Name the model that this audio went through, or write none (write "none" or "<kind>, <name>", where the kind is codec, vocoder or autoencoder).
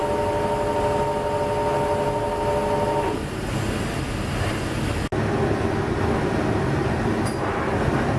none